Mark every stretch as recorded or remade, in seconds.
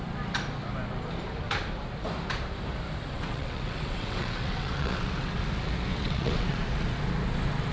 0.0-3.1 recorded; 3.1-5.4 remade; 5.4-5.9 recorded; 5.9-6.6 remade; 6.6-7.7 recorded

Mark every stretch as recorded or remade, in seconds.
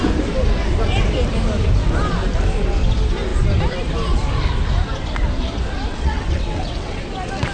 0.0-5.9 recorded; 5.9-7.0 remade; 7.0-7.5 recorded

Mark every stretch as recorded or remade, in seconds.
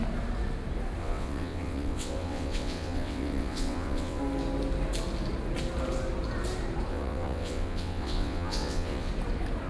0.0-1.0 recorded; 1.0-4.2 remade; 4.2-6.9 recorded; 6.9-9.1 remade; 9.1-9.7 recorded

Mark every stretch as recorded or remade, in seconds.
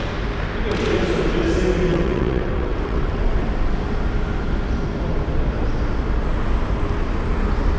0.0-1.9 recorded; 1.9-3.5 remade; 3.5-7.8 recorded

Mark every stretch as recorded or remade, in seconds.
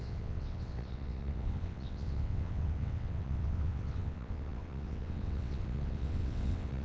0.0-6.8 remade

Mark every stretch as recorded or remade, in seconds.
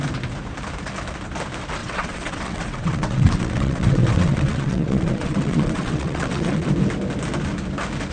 0.0-1.8 recorded; 1.8-6.7 remade; 6.7-8.1 recorded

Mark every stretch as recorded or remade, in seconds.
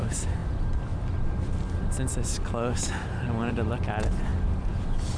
0.0-5.2 recorded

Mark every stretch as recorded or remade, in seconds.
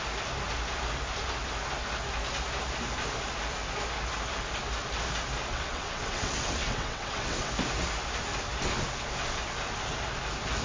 0.0-5.5 recorded; 5.5-7.5 remade; 7.5-10.6 recorded